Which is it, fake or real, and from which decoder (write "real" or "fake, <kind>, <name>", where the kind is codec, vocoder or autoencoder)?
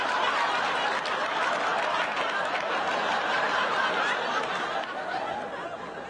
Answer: real